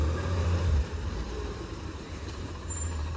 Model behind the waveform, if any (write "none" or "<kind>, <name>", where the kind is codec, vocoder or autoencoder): vocoder, BigVGAN v2